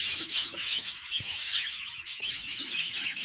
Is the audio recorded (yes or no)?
no